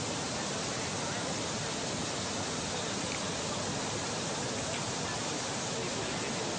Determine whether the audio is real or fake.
real